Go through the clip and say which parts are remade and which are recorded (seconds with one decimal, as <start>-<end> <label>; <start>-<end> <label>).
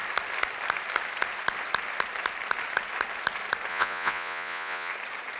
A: 0.0-3.7 recorded; 3.7-4.9 remade; 4.9-5.4 recorded